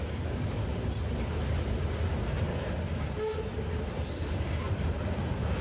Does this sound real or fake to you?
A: fake